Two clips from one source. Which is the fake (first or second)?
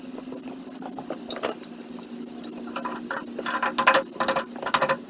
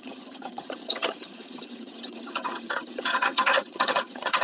second